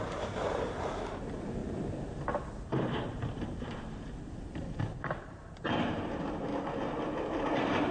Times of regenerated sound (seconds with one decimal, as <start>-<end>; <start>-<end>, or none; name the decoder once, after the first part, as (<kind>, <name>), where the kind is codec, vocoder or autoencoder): 0.0-6.5 (vocoder, BigVGAN v2); 7.1-7.9